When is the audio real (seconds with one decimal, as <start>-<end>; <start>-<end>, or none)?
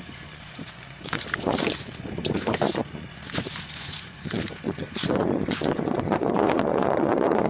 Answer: none